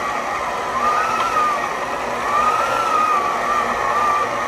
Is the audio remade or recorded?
recorded